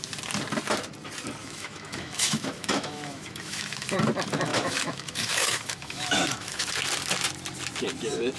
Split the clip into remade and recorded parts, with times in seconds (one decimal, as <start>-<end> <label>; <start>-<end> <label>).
0.0-1.4 recorded; 1.4-3.9 remade; 3.9-4.5 recorded; 4.5-6.7 remade; 6.7-8.4 recorded